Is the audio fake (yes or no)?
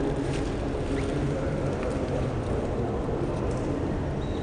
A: no